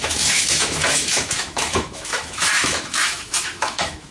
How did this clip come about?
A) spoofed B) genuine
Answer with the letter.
A